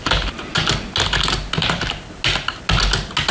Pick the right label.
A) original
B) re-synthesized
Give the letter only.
A